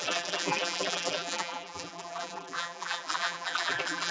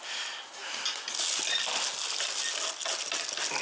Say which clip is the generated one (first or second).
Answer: first